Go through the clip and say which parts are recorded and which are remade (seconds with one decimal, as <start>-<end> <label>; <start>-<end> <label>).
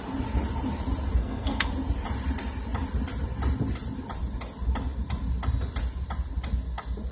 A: 0.0-1.2 recorded; 1.2-1.7 remade; 1.7-7.1 recorded